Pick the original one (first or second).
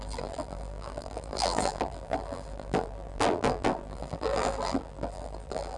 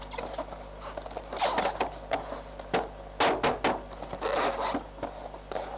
second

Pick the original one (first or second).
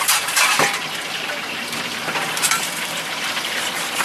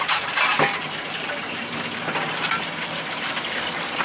second